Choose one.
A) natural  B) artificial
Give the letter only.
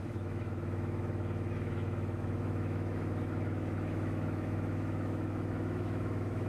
B